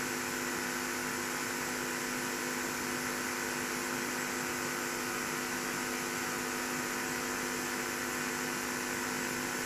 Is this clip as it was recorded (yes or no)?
yes